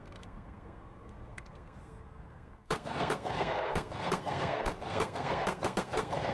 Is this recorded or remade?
remade